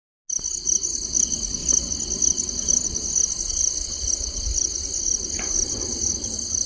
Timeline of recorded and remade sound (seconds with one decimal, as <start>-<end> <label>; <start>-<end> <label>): 0.0-6.7 recorded